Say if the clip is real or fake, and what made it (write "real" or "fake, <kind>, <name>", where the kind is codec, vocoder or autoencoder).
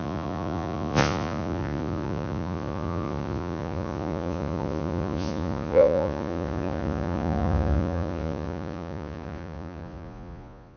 fake, vocoder, Vocos